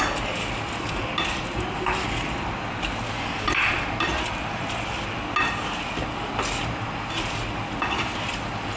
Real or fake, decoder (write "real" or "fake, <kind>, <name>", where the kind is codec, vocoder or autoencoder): real